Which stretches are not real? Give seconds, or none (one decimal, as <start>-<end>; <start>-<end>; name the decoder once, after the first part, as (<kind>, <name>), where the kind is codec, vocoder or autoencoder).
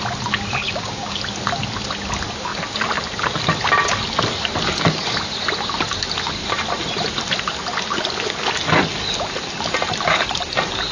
0.6-1.2 (codec, DAC)